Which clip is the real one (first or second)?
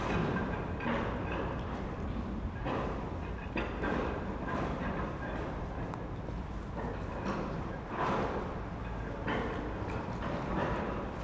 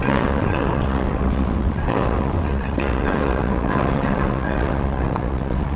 first